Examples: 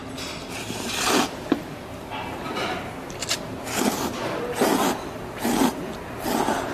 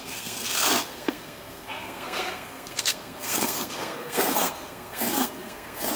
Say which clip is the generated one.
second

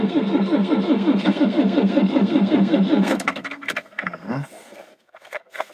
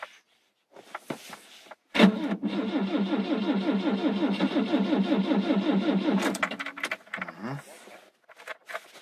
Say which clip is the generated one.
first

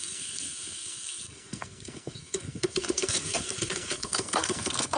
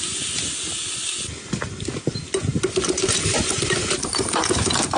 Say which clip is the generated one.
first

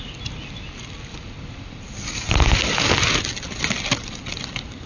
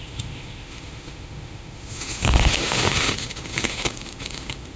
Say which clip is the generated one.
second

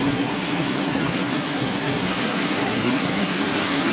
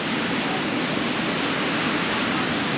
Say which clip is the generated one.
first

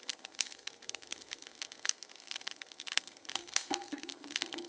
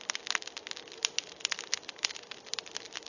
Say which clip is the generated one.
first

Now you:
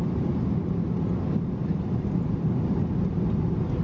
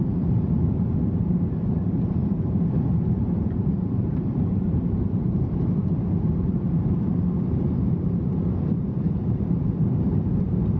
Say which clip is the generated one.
second